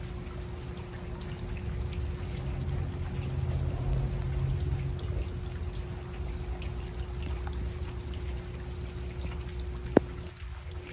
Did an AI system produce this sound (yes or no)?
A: no